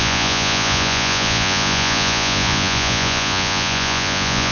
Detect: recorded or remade remade